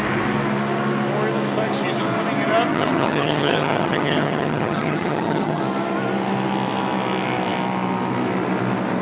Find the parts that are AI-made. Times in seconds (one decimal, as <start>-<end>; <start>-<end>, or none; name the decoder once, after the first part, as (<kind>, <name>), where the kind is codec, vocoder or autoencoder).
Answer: 2.7-5.6 (vocoder, HiFi-GAN)